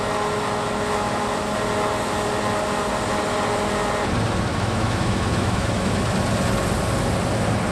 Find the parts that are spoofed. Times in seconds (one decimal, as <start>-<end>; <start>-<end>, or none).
4.5-5.9